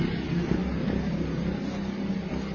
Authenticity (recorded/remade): recorded